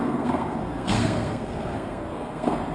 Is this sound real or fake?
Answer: fake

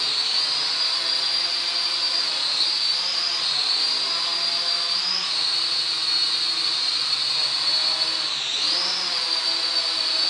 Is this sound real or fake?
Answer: real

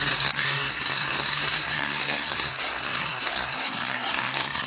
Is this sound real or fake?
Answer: fake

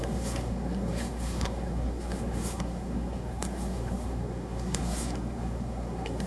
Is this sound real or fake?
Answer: fake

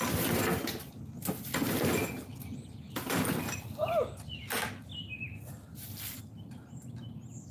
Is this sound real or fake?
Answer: real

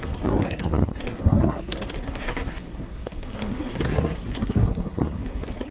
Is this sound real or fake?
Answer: fake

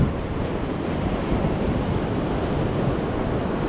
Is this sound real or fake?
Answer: real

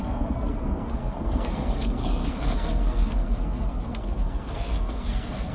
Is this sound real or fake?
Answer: fake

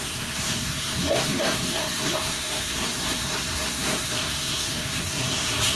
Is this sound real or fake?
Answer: fake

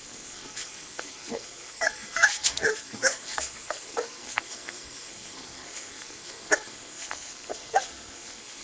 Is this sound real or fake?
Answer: fake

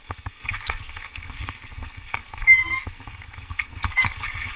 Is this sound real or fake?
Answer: fake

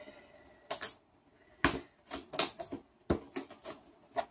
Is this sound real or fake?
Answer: real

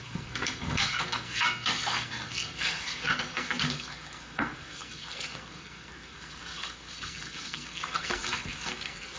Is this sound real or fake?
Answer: fake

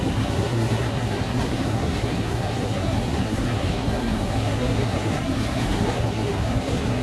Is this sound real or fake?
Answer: fake